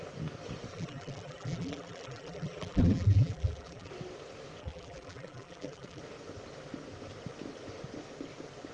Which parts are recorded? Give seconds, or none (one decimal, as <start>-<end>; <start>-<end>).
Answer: 0.0-0.7; 3.9-4.6; 6.0-8.7